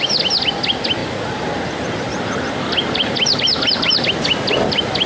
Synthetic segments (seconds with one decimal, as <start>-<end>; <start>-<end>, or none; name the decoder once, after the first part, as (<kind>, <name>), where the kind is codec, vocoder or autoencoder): none